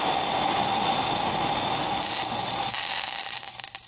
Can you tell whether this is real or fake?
real